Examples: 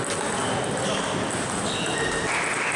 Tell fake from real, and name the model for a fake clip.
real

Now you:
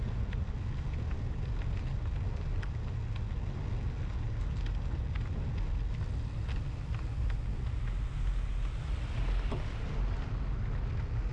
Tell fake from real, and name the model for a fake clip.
real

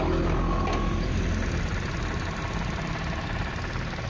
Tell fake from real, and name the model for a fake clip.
real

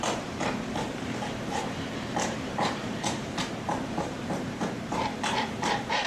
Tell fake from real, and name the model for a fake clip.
fake, vocoder, BigVGAN v2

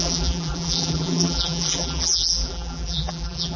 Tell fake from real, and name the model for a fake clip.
fake, vocoder, BigVGAN v2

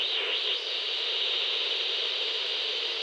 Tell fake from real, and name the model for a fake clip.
fake, vocoder, BigVGAN v2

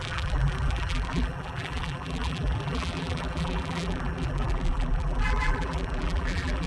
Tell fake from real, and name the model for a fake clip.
fake, vocoder, BigVGAN v2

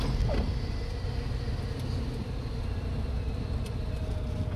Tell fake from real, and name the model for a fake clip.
real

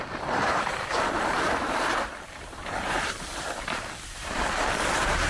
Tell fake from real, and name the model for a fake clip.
fake, vocoder, BigVGAN v2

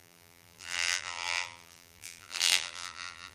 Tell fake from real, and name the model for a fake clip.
fake, vocoder, BigVGAN v2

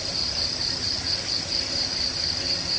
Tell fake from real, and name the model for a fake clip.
fake, vocoder, BigVGAN v2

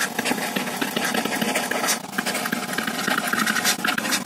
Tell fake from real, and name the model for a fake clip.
real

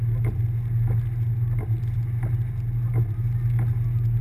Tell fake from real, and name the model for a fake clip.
real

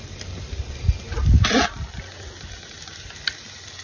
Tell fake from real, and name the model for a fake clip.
real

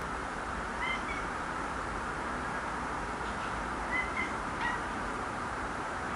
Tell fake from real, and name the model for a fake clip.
fake, vocoder, BigVGAN v2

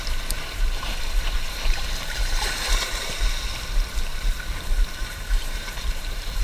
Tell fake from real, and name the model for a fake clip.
fake, vocoder, BigVGAN v2